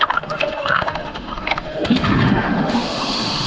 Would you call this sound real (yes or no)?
no